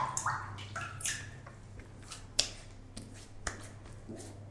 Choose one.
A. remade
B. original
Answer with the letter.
B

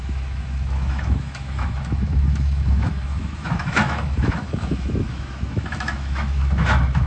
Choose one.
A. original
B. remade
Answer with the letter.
B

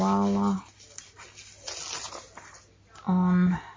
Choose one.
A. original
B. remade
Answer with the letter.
A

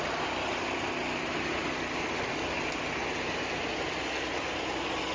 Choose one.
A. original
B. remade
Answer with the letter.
A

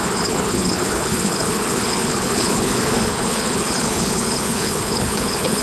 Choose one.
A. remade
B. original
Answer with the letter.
A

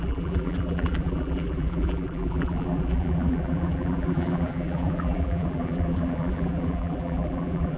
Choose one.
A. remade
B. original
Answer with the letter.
A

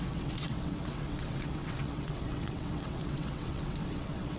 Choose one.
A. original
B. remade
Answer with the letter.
B